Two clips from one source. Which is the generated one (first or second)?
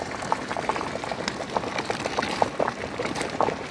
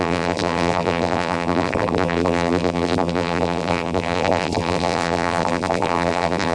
second